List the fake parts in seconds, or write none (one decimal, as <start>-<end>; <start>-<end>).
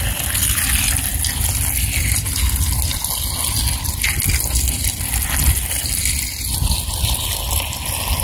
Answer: none